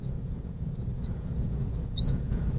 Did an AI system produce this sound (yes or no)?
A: yes